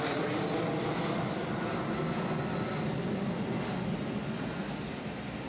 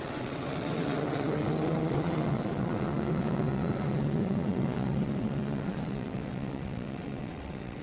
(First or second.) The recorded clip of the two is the first